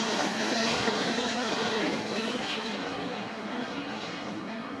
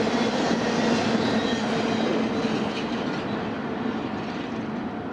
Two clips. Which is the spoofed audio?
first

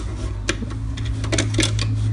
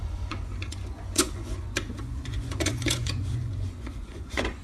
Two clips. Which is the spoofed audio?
second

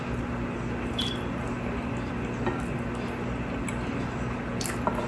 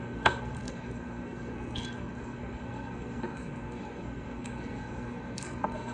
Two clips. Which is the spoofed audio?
second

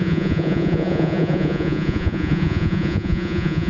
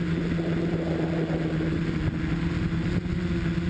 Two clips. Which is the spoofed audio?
first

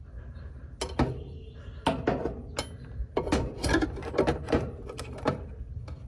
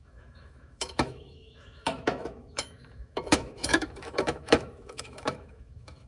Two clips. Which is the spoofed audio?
second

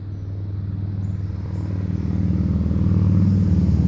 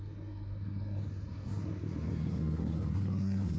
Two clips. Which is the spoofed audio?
second